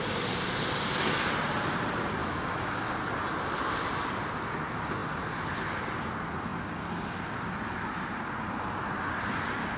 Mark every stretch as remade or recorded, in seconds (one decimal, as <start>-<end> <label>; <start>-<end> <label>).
0.0-2.2 recorded; 2.2-2.9 remade; 2.9-9.8 recorded